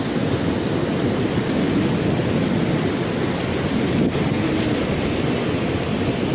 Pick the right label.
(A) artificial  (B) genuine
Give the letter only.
B